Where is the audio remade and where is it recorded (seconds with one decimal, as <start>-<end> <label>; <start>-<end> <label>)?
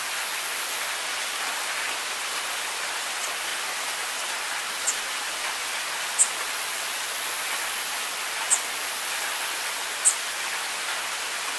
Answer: 0.0-11.6 recorded